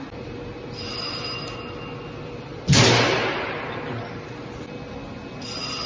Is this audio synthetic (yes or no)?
no